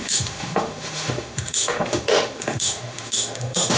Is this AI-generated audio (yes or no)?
yes